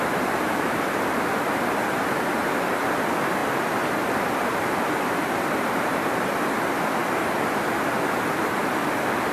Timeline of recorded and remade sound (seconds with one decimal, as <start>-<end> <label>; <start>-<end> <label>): 0.0-9.3 recorded